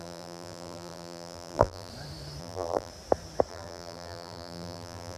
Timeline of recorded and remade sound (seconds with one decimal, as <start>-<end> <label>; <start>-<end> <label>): 0.0-1.9 remade; 1.9-2.4 recorded; 2.4-2.9 remade; 2.9-3.5 recorded; 3.5-5.2 remade